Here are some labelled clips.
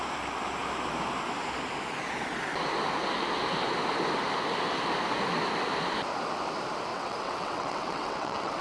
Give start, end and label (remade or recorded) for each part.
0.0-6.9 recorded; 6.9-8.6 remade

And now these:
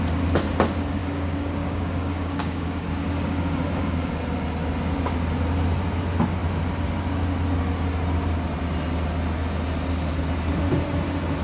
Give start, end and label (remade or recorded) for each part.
0.0-1.0 recorded; 1.0-4.1 remade; 4.1-11.4 recorded

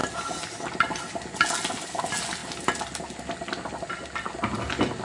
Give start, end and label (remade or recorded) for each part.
0.0-5.0 recorded

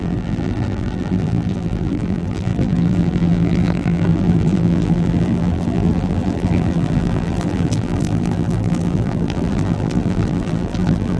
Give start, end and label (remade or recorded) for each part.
0.0-11.2 remade

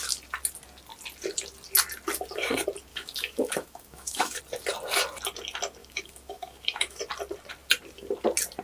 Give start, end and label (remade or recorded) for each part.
0.0-2.9 recorded; 2.9-4.4 remade; 4.4-5.8 recorded; 5.8-7.0 remade; 7.0-8.6 recorded

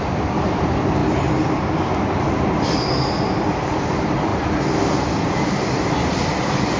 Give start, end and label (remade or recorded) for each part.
0.0-6.8 recorded

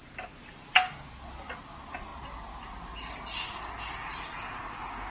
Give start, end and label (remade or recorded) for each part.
0.0-5.1 recorded